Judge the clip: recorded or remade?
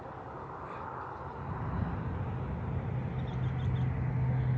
recorded